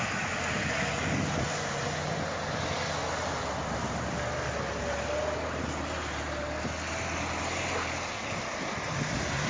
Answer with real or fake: real